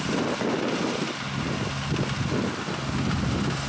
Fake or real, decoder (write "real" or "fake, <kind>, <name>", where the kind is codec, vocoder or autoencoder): real